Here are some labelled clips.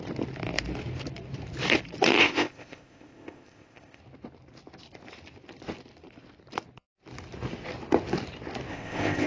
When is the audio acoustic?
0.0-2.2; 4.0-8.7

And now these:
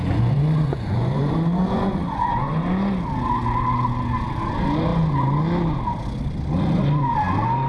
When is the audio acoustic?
2.5-7.7

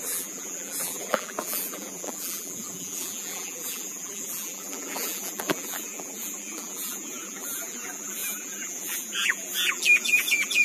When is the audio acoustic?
none